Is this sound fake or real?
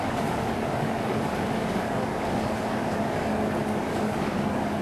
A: fake